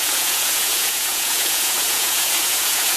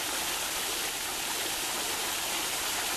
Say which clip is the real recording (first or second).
second